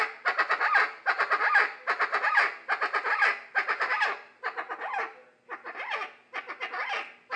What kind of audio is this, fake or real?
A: real